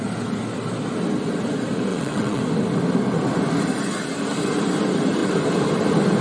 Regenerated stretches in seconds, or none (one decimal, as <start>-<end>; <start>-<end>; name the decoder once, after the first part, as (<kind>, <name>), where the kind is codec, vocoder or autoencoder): 1.9-2.4 (vocoder, WaveNeXt)